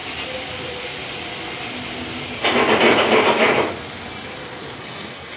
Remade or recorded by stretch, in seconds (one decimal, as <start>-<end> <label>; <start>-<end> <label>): 0.0-4.8 recorded; 4.8-5.4 remade